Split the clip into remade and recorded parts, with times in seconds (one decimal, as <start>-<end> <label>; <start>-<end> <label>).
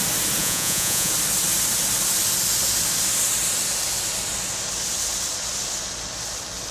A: 0.0-0.4 recorded; 0.4-1.1 remade; 1.1-6.7 recorded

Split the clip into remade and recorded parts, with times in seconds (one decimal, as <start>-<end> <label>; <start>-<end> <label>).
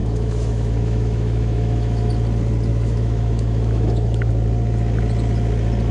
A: 0.0-2.1 remade; 2.1-2.7 recorded; 2.7-4.3 remade; 4.3-5.9 recorded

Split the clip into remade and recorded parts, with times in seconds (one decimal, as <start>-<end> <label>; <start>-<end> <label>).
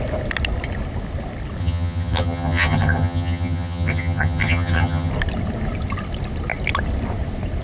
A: 0.0-1.6 recorded; 1.6-5.1 remade; 5.1-7.6 recorded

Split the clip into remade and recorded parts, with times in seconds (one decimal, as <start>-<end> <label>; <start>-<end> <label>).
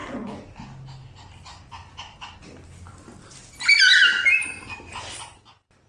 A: 0.0-5.9 recorded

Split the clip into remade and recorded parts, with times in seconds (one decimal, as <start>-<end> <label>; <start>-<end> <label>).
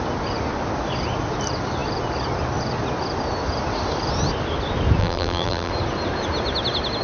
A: 0.0-5.0 recorded; 5.0-5.7 remade; 5.7-7.0 recorded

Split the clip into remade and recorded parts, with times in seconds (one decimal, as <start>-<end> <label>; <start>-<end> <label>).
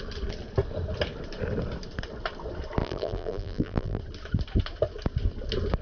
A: 0.0-2.8 recorded; 2.8-4.0 remade; 4.0-5.8 recorded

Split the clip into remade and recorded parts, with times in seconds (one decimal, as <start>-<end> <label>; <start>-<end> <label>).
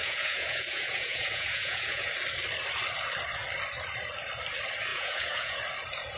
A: 0.0-2.1 remade; 2.1-4.9 recorded; 4.9-5.6 remade; 5.6-6.2 recorded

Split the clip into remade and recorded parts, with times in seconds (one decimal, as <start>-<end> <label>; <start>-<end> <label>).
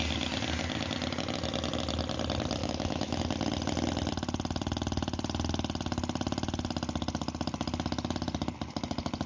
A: 0.0-2.6 recorded; 2.6-3.2 remade; 3.2-9.3 recorded